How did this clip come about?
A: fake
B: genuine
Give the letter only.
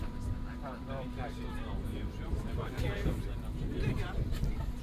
A